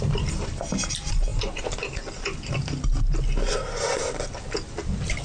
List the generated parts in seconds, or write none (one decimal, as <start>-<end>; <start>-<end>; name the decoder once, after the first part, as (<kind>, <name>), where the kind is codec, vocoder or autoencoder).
none